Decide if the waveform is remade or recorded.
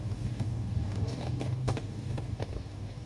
remade